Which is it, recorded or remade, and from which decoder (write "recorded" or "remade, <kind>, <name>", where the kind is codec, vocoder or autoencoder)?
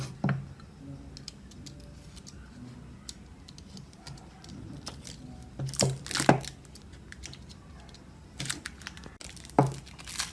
recorded